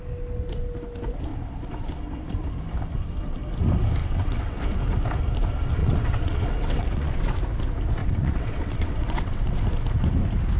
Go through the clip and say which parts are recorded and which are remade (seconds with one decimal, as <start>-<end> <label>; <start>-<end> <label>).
0.0-4.0 recorded; 4.0-4.6 remade; 4.6-5.8 recorded; 5.8-7.4 remade; 7.4-8.0 recorded; 8.0-9.6 remade; 9.6-10.6 recorded